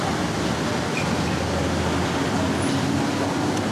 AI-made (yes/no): no